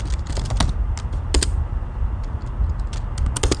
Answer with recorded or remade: recorded